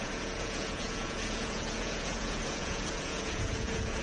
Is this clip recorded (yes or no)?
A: no